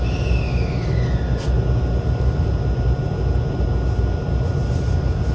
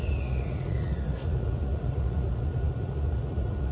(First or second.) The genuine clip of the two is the first